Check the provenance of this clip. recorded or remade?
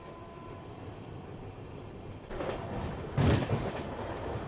recorded